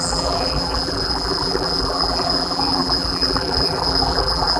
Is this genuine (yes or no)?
no